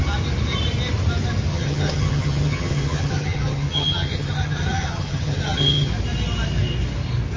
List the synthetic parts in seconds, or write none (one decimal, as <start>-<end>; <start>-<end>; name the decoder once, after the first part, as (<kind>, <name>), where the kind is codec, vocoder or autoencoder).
1.5-5.9 (vocoder, HiFi-GAN)